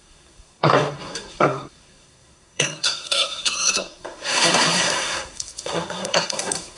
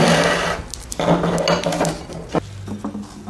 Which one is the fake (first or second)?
first